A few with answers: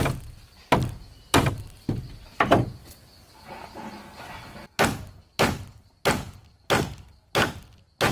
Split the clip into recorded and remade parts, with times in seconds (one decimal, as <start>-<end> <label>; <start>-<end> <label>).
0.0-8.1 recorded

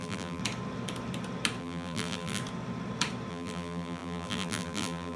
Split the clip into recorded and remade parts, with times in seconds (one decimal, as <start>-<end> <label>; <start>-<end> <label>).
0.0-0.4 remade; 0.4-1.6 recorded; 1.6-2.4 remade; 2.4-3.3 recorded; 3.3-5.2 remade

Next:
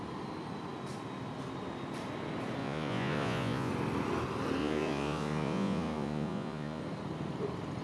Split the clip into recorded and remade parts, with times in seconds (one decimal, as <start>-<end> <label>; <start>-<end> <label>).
0.0-2.6 recorded; 2.6-3.7 remade; 3.7-4.6 recorded; 4.6-6.8 remade; 6.8-7.8 recorded